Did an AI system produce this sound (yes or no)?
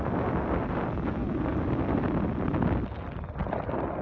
no